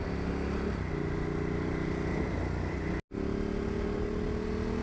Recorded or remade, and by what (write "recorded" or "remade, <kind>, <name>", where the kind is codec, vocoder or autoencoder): recorded